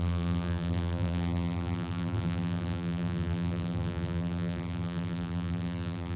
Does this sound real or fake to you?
fake